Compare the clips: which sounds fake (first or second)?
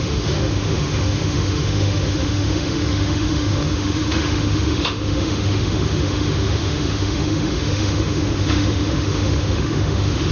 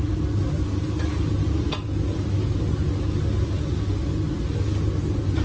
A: first